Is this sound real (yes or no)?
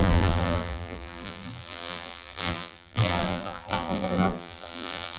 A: no